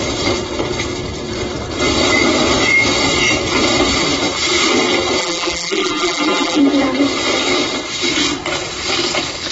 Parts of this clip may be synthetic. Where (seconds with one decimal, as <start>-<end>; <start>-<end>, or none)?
5.2-6.6